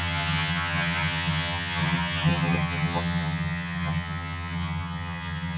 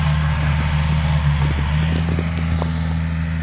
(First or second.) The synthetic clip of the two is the first